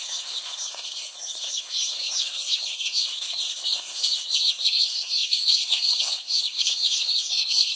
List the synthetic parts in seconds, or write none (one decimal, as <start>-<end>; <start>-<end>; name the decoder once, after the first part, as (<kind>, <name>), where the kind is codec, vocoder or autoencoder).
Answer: 0.0-7.8 (codec, SNAC)